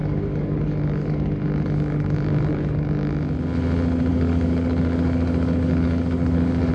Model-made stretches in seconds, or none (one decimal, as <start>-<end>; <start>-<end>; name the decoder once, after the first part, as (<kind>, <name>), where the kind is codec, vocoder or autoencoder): 0.0-3.1 (codec, DAC); 4.1-6.7

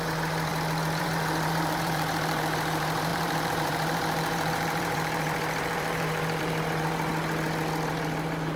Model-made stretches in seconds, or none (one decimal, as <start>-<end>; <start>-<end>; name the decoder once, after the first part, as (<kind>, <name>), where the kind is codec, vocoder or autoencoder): 0.0-0.5 (vocoder, BigVGAN v2); 1.0-7.1; 7.9-8.6

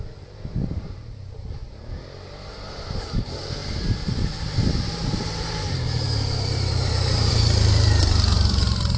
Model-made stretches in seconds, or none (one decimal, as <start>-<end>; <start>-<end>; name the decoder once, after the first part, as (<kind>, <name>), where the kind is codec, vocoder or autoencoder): 0.0-1.6 (vocoder, BigVGAN v2); 2.7-9.0

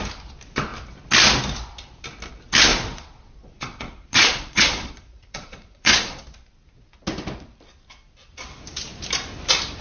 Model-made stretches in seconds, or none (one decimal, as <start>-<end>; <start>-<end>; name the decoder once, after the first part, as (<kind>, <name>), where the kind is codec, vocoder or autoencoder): 2.7-6.2 (vocoder, Vocos)